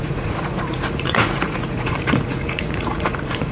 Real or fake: fake